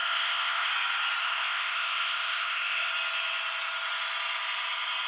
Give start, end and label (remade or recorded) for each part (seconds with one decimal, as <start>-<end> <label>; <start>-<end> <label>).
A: 0.0-0.7 remade; 0.7-1.2 recorded; 1.2-2.9 remade; 2.9-5.1 recorded